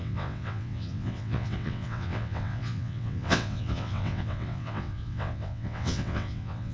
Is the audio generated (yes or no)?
yes